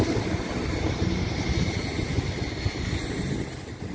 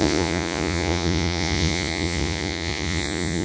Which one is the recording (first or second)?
first